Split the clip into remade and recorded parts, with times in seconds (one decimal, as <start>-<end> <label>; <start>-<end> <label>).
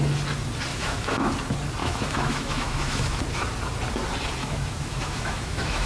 0.0-0.7 recorded; 0.7-1.3 remade; 1.3-1.8 recorded; 1.8-3.2 remade; 3.2-4.4 recorded; 4.4-5.9 remade